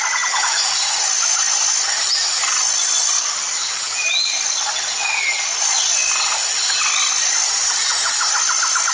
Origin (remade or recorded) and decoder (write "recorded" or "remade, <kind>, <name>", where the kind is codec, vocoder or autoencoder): recorded